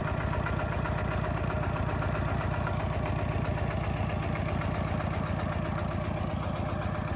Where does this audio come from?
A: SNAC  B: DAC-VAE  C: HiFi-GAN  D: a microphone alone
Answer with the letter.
D